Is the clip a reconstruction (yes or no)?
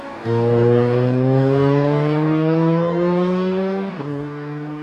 yes